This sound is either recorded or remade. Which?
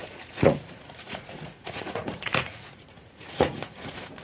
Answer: remade